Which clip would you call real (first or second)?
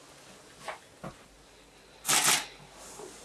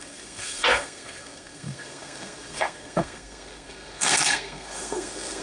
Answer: first